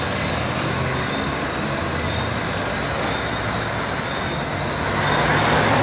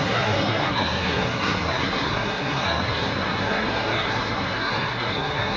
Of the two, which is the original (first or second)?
first